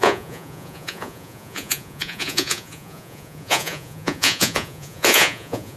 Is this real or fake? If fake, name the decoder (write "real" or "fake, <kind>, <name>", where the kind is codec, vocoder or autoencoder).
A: fake, vocoder, Vocos